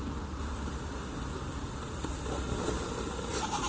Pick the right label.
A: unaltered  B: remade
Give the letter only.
A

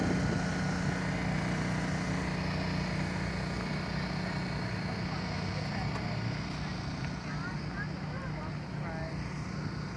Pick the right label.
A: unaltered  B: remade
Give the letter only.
A